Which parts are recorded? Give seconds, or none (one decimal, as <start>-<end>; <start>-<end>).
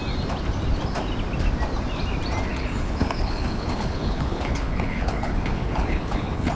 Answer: 0.0-2.5